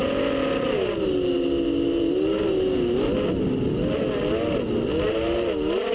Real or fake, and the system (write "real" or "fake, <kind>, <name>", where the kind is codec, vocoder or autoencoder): real